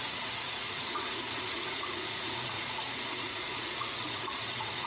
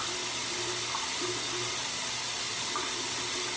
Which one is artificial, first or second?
first